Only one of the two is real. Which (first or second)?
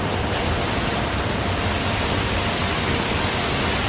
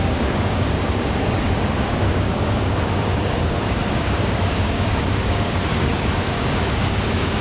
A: first